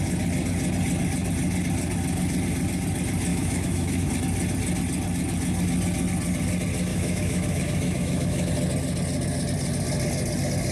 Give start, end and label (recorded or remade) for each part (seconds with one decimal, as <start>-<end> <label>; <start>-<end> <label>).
0.0-3.3 recorded; 3.3-4.1 remade; 4.1-6.9 recorded; 6.9-8.5 remade; 8.5-10.7 recorded